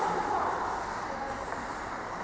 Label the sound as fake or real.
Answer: real